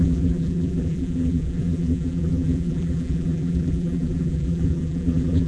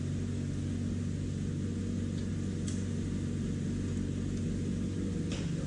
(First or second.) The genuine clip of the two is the second